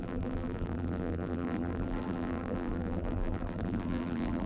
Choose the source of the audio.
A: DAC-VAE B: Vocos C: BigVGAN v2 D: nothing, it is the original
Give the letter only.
C